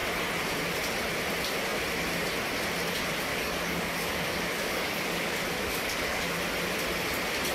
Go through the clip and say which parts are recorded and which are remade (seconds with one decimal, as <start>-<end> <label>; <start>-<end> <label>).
0.0-3.3 recorded; 3.3-6.4 remade; 6.4-7.5 recorded